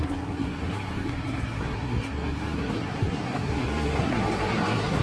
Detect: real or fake fake